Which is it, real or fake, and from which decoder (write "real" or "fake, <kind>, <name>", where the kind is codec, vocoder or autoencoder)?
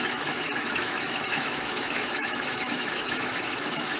fake, autoencoder, DAC-VAE